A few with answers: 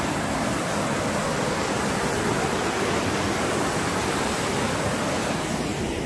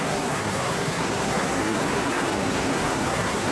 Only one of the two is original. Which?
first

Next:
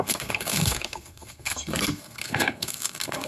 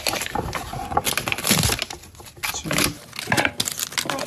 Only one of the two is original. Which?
second